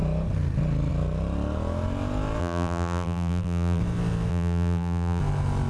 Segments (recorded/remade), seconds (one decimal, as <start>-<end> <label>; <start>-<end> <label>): 0.0-2.4 recorded; 2.4-3.8 remade; 3.8-4.3 recorded; 4.3-5.2 remade; 5.2-5.7 recorded